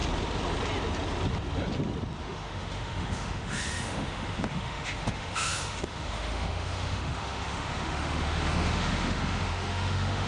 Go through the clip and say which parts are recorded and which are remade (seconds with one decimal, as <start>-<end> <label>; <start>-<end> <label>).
0.0-2.2 recorded; 2.2-10.3 remade

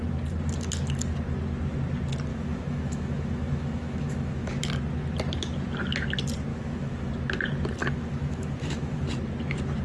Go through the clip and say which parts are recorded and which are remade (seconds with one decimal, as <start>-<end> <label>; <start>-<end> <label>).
0.0-2.3 recorded; 2.3-4.5 remade; 4.5-6.5 recorded; 6.5-7.1 remade; 7.1-7.8 recorded; 7.8-9.1 remade; 9.1-9.8 recorded

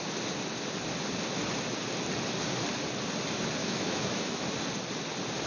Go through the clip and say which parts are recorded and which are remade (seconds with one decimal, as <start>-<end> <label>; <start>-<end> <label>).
0.0-3.6 recorded; 3.6-4.4 remade; 4.4-5.5 recorded

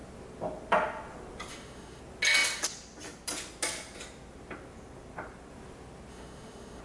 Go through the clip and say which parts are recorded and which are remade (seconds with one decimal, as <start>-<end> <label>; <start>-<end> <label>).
0.0-1.5 recorded; 1.5-2.0 remade; 2.0-6.1 recorded; 6.1-6.8 remade